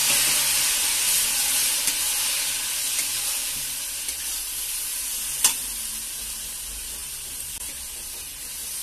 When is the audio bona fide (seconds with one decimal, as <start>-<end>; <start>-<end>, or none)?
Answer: 0.0-3.4; 5.2-7.0; 7.8-8.8